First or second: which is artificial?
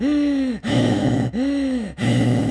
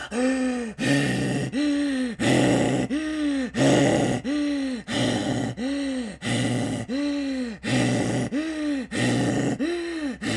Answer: first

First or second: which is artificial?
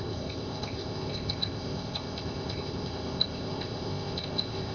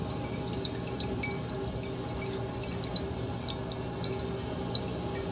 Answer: first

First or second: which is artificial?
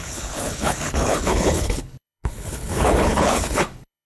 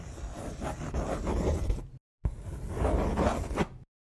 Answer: first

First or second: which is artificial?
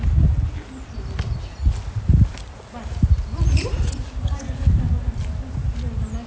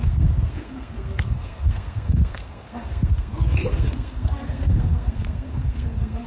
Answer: second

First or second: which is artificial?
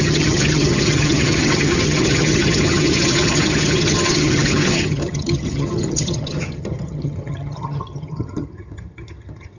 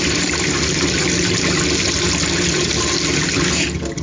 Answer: first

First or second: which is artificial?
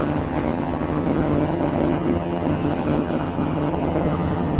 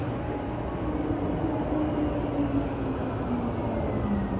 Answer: first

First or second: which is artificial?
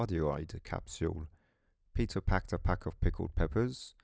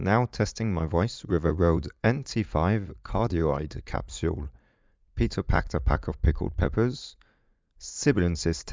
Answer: second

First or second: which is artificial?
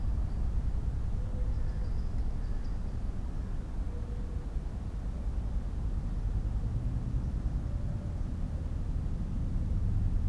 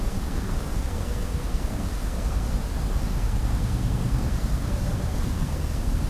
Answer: second